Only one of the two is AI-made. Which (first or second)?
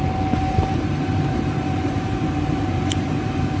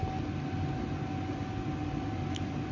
first